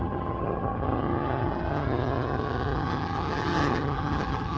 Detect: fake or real fake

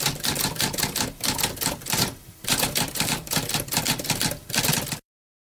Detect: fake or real fake